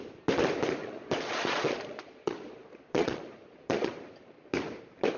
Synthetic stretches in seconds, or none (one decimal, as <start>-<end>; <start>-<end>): 0.8-3.9